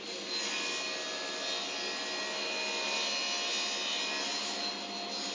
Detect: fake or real real